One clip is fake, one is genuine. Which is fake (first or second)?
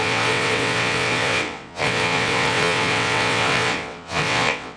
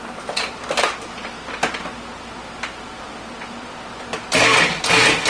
first